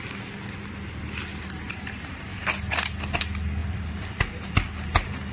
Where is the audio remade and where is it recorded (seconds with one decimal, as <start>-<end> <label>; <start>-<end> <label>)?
0.0-1.3 recorded; 1.3-2.1 remade; 2.1-3.6 recorded; 3.6-4.5 remade; 4.5-5.3 recorded